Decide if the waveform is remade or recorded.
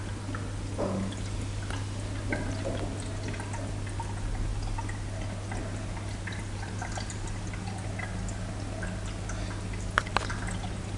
recorded